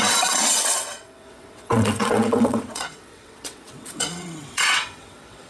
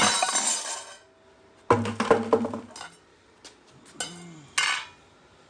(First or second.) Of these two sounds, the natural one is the second